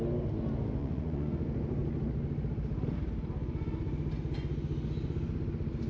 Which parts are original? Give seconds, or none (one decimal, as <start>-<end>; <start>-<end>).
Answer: 0.0-0.8; 1.3-5.9